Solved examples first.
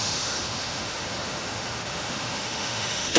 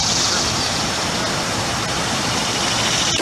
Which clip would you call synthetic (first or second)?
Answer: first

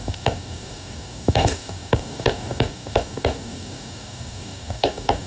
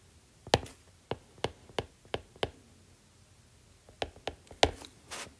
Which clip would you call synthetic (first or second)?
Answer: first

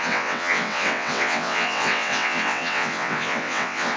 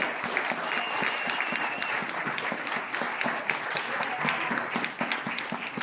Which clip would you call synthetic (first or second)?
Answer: first